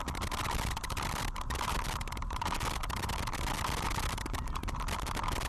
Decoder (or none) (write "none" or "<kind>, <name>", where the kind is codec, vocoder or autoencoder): vocoder, BigVGAN v2